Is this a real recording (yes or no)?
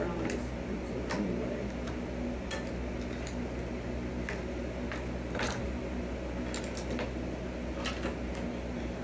yes